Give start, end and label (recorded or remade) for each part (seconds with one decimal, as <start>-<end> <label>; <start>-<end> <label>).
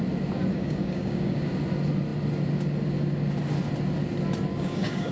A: 0.0-0.5 recorded; 0.5-1.5 remade; 1.5-4.5 recorded; 4.5-5.1 remade